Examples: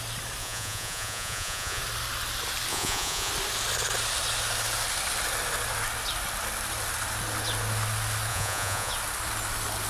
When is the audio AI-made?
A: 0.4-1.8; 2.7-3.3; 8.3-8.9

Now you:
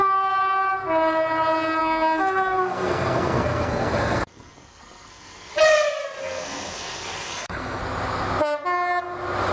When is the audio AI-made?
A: 1.8-5.5; 6.2-7.8

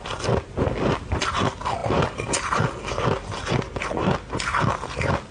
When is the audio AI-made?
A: none

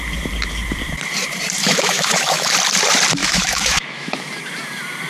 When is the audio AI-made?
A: 1.6-2.5; 3.2-4.1

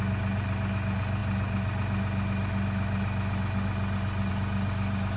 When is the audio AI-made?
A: none

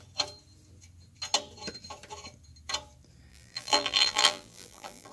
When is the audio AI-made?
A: 3.3-5.1

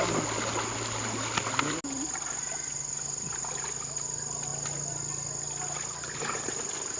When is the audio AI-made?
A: none